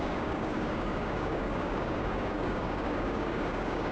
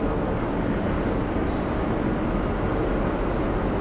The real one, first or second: second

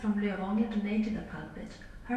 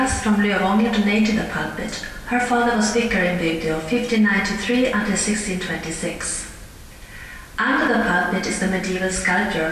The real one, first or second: second